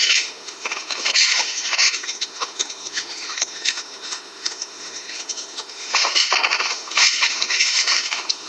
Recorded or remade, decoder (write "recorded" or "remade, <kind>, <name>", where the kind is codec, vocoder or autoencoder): remade, autoencoder, DAC-VAE